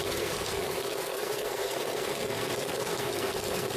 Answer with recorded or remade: remade